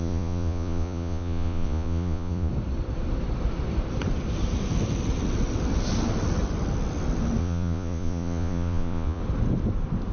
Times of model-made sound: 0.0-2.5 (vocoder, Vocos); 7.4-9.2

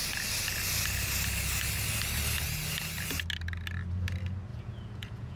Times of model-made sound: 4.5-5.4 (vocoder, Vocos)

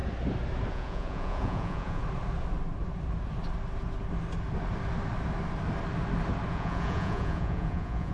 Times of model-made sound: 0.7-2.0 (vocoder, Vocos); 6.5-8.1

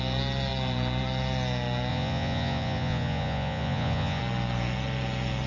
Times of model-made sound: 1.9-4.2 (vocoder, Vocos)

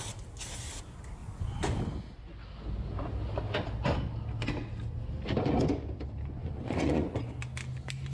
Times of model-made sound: 1.2-1.8 (vocoder, Vocos); 6.4-7.3